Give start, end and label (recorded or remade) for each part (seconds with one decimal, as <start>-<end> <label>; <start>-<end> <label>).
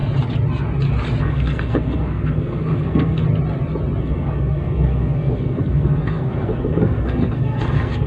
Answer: 0.0-1.2 recorded; 1.2-3.2 remade; 3.2-4.0 recorded; 4.0-8.1 remade